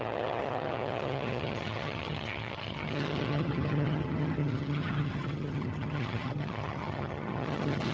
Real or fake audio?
fake